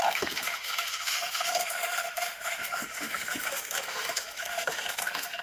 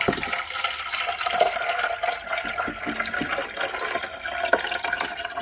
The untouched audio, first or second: second